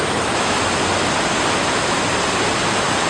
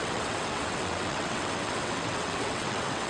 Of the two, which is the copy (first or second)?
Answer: second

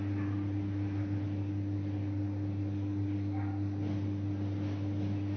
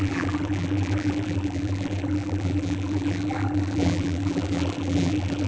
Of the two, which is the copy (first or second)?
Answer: second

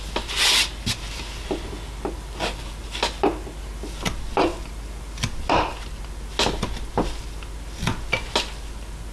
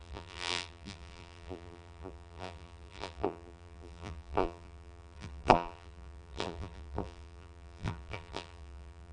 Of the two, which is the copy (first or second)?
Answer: second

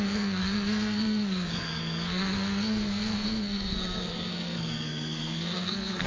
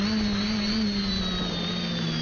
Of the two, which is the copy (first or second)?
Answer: first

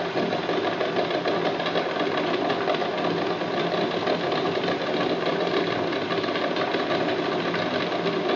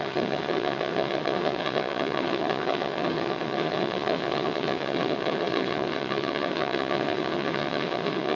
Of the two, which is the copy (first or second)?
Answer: second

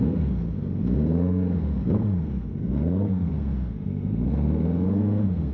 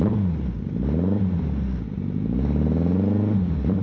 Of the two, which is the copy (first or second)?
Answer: first